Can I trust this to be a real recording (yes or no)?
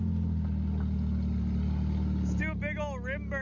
yes